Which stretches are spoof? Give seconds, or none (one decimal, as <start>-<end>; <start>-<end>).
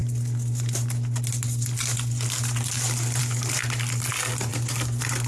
none